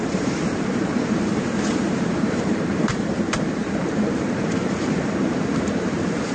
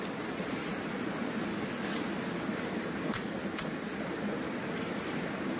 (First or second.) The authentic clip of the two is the second